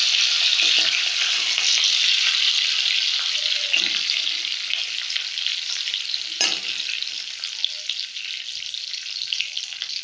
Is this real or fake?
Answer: real